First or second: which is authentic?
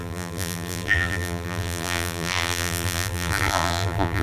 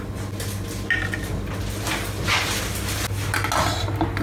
second